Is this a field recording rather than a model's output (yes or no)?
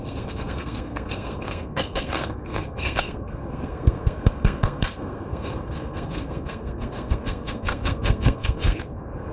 no